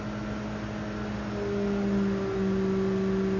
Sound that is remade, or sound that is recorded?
recorded